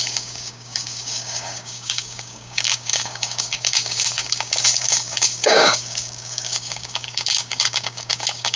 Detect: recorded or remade remade